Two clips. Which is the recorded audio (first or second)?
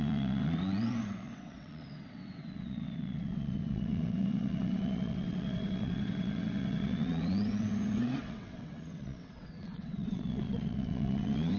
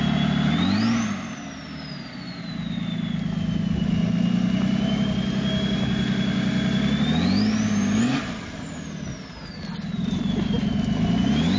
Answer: second